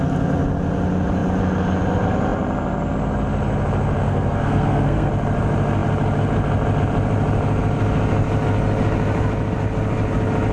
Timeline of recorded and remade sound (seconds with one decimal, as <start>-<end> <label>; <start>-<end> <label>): 0.0-4.0 recorded; 4.0-5.1 remade; 5.1-10.5 recorded

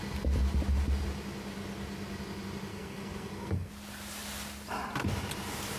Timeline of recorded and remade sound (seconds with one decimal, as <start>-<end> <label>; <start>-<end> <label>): 0.0-2.7 recorded; 2.7-3.7 remade; 3.7-5.8 recorded

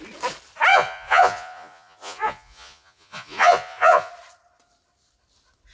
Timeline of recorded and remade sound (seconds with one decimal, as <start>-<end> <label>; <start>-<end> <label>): 0.0-0.7 recorded; 0.7-4.1 remade; 4.1-5.7 recorded

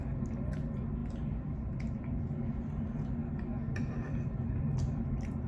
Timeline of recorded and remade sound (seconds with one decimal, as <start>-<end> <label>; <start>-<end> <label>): 0.0-5.5 recorded

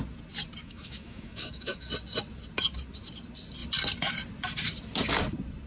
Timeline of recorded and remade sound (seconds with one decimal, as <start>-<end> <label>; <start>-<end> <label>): 0.0-0.6 recorded; 0.6-1.9 remade; 1.9-5.7 recorded

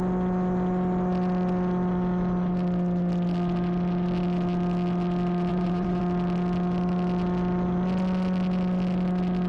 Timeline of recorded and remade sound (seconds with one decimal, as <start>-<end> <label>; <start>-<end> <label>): 0.0-5.5 recorded; 5.5-6.0 remade; 6.0-9.5 recorded